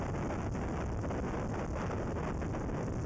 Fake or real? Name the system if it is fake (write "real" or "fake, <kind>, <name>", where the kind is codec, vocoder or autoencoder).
real